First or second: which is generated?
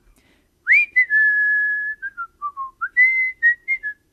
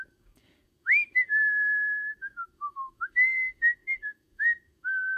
second